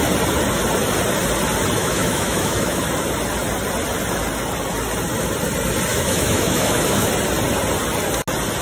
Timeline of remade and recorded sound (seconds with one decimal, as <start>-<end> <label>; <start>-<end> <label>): 0.0-1.8 recorded; 1.8-2.8 remade; 2.8-5.9 recorded; 5.9-7.1 remade; 7.1-8.6 recorded

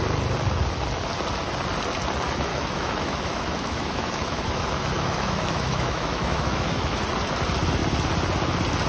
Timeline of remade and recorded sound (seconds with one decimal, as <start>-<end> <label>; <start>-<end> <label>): 0.0-2.5 recorded; 2.5-7.0 remade; 7.0-8.9 recorded

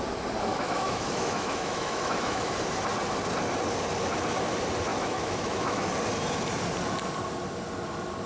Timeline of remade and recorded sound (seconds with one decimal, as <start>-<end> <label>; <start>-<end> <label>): 0.0-0.5 recorded; 0.5-2.5 remade; 2.5-4.9 recorded; 4.9-5.9 remade; 5.9-8.3 recorded

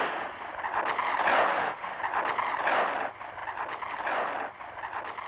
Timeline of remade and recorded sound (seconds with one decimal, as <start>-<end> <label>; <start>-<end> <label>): 0.0-1.5 recorded; 1.5-2.0 remade; 2.0-5.3 recorded

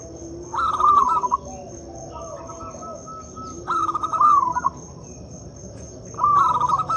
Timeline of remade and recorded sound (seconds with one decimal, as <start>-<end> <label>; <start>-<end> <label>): 0.0-3.8 recorded; 3.8-4.5 remade; 4.5-7.0 recorded

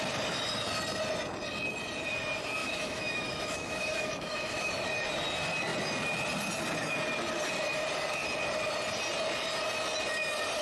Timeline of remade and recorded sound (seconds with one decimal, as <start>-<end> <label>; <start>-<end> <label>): 0.0-2.6 recorded; 2.6-4.7 remade; 4.7-10.6 recorded

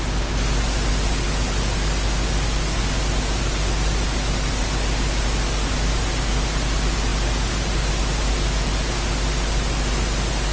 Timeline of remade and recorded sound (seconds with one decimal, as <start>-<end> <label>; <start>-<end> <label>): 0.0-10.5 recorded